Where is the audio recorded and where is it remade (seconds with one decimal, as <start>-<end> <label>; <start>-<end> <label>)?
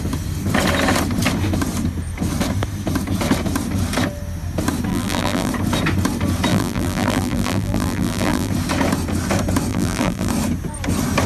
0.0-4.9 recorded; 4.9-5.5 remade; 5.5-6.5 recorded; 6.5-8.5 remade; 8.5-9.7 recorded; 9.7-10.3 remade; 10.3-11.3 recorded